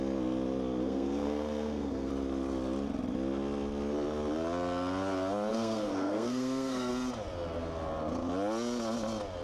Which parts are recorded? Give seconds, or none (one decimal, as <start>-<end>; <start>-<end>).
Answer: 0.0-0.8; 2.1-5.5; 6.9-9.4